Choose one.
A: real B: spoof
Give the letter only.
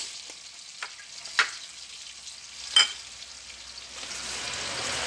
A